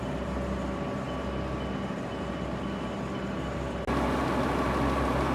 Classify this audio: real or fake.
real